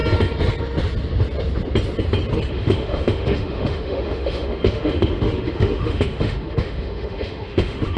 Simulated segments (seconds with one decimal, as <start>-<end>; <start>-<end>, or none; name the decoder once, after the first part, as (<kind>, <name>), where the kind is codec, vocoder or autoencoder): 2.5-8.0 (autoencoder, DAC-VAE)